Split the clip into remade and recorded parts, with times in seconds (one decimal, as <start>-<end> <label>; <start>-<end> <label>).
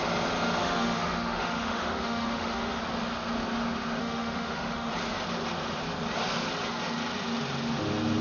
0.0-0.6 recorded; 0.6-2.8 remade; 2.8-4.0 recorded; 4.0-4.9 remade; 4.9-8.2 recorded